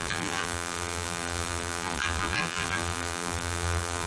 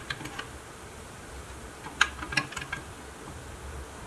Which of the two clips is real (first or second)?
second